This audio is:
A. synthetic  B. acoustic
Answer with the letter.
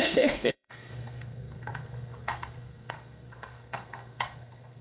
A